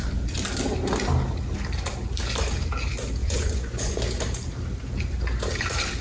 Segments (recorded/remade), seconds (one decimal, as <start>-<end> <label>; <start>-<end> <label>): 0.0-3.2 recorded; 3.2-4.0 remade; 4.0-6.0 recorded